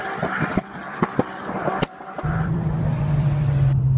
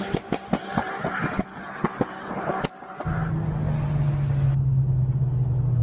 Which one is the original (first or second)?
second